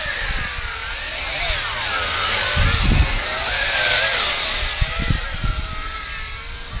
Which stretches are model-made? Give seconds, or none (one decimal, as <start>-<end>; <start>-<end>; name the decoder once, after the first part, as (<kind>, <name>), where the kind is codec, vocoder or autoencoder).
none